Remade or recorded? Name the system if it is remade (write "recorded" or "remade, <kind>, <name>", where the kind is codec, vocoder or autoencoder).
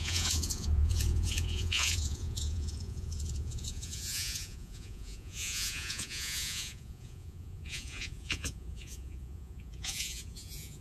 remade, vocoder, Vocos